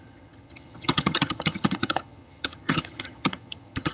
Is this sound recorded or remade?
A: remade